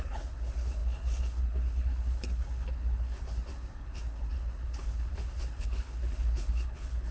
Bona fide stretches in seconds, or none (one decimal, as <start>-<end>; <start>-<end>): none